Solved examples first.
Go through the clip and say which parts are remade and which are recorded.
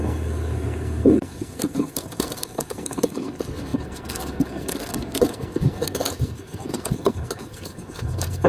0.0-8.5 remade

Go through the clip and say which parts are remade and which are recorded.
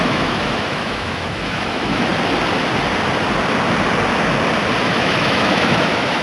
0.0-2.1 remade; 2.1-4.8 recorded; 4.8-6.2 remade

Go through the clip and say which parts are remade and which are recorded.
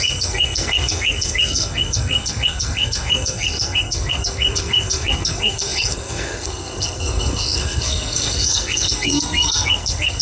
0.0-10.2 remade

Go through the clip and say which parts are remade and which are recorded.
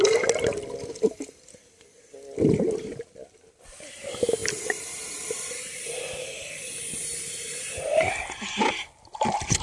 0.0-4.4 recorded; 4.4-7.6 remade; 7.6-9.6 recorded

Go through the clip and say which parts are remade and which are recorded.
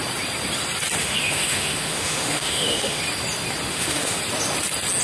0.0-1.0 recorded; 1.0-3.0 remade; 3.0-3.7 recorded; 3.7-4.2 remade; 4.2-5.0 recorded